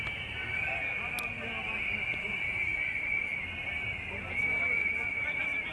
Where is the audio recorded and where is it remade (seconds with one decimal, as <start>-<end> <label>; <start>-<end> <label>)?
0.0-5.7 recorded